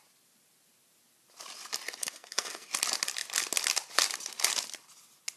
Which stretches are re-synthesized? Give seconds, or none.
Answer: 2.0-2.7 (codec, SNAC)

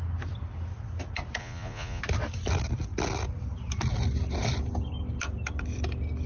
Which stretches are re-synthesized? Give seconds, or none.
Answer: 1.4-2.0 (vocoder, Vocos)

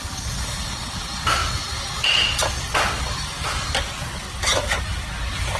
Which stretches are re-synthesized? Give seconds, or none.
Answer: none

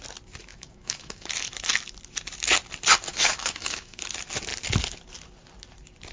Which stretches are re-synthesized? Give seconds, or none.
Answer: 0.5-1.3 (autoencoder, DAC-VAE); 3.1-4.0